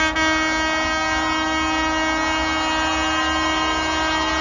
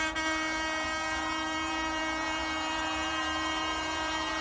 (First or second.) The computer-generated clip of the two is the second